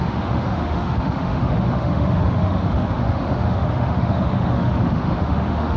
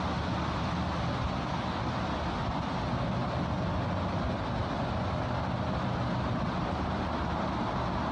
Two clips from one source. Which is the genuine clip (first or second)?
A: second